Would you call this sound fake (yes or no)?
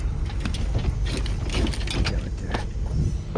no